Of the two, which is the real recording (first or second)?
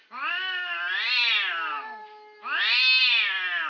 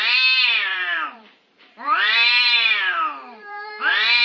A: first